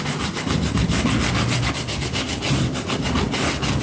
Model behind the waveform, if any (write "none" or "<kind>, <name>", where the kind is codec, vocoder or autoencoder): none